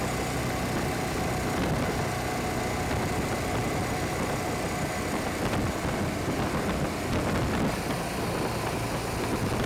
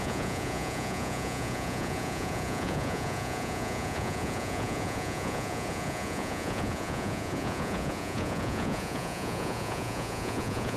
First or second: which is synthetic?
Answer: second